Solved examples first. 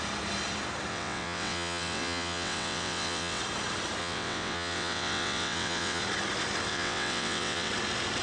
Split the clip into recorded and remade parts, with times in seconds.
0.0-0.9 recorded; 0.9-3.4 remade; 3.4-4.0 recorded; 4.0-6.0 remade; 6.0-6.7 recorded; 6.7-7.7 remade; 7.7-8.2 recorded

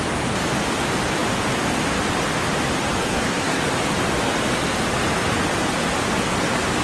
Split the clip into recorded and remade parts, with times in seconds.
0.0-3.0 recorded; 3.0-3.6 remade; 3.6-6.8 recorded

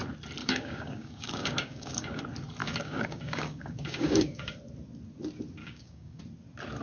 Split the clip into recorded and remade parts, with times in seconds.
0.0-0.4 recorded; 0.4-2.2 remade; 2.2-2.6 recorded; 2.6-4.5 remade; 4.5-5.6 recorded; 5.6-6.2 remade; 6.2-6.8 recorded

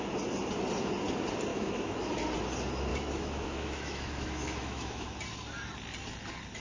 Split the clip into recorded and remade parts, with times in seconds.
0.0-1.5 recorded; 1.5-2.1 remade; 2.1-2.9 recorded; 2.9-5.2 remade; 5.2-6.6 recorded

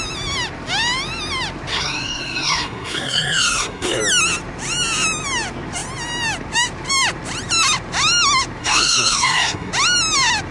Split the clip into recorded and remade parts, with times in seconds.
0.0-1.7 recorded; 1.7-4.0 remade; 4.0-8.6 recorded; 8.6-9.7 remade; 9.7-10.5 recorded

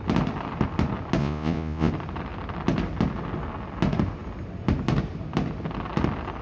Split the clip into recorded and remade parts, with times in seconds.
0.0-1.2 recorded; 1.2-1.9 remade; 1.9-6.4 recorded

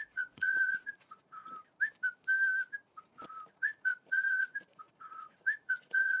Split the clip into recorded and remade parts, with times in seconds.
0.0-1.4 remade; 1.4-3.5 recorded; 3.5-6.2 remade